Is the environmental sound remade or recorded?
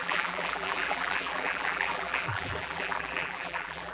remade